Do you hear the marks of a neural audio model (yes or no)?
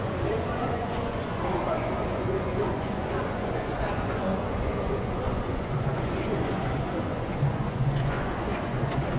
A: yes